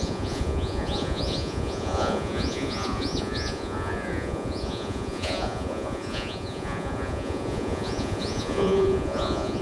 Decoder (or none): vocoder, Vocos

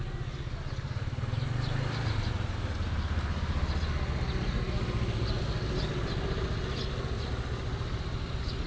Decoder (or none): none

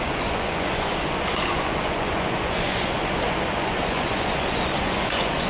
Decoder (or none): vocoder, Vocos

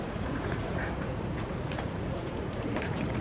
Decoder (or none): vocoder, Vocos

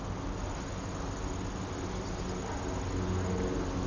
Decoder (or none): none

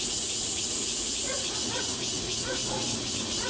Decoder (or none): vocoder, Vocos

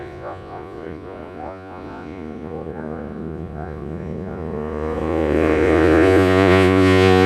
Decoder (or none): vocoder, Vocos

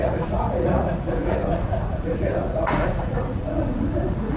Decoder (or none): vocoder, Vocos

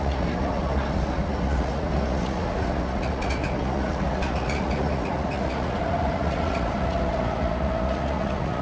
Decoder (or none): vocoder, Vocos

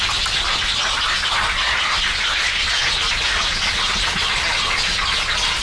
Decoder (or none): none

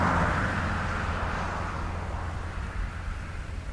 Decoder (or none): none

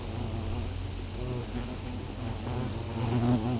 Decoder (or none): none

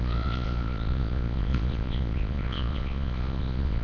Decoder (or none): vocoder, Vocos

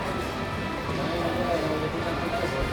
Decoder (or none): none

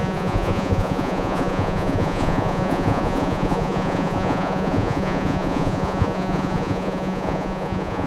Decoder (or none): vocoder, Vocos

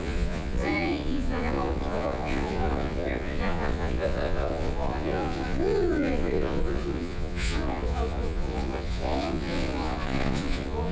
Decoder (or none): vocoder, Vocos